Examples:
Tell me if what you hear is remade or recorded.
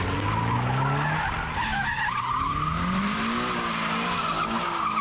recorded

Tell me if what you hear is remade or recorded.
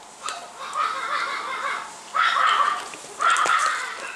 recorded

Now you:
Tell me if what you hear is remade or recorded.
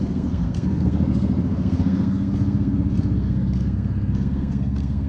remade